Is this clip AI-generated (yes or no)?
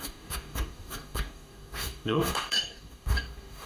yes